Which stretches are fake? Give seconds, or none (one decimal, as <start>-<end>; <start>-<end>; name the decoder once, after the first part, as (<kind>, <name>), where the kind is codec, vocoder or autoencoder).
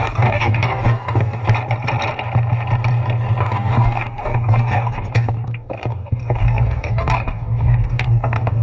0.0-1.4 (codec, DAC); 3.4-8.6